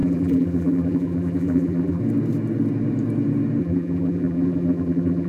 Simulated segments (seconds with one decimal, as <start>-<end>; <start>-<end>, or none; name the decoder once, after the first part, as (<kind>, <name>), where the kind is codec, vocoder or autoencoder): 0.0-2.0 (vocoder, BigVGAN v2); 3.6-5.3